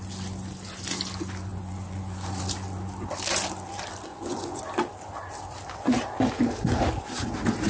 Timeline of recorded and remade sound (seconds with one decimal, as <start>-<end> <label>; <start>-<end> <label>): 0.0-1.5 recorded; 1.5-2.4 remade; 2.4-4.1 recorded; 4.1-4.6 remade; 4.6-7.7 recorded